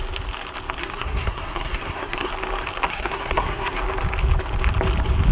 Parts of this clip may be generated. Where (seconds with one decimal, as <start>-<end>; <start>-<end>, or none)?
0.8-2.3; 2.9-3.8